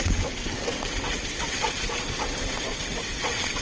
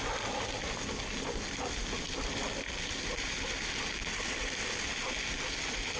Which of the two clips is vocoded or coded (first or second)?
first